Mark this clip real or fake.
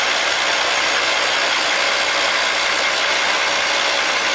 real